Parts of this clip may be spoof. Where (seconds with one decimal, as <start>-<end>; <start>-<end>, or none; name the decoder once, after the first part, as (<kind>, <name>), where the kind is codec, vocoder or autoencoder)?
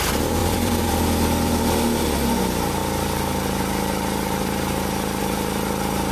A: 0.4-2.0 (vocoder, BigVGAN v2); 2.8-5.2